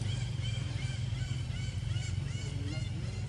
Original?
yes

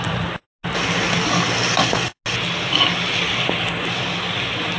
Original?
yes